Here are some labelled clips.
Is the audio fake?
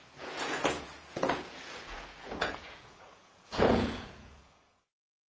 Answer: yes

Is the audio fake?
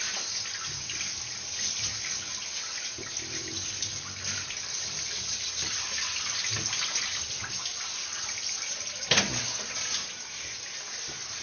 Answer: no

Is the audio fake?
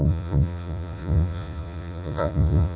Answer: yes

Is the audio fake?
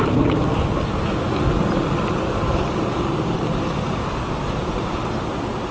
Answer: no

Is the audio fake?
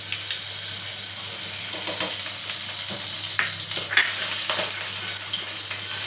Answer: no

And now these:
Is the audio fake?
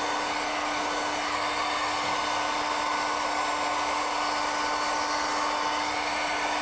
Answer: no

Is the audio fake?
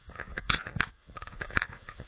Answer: yes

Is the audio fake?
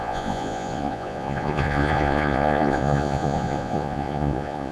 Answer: yes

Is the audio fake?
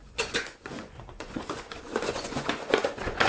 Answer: yes